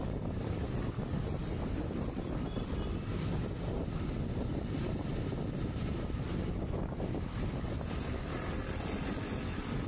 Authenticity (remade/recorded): recorded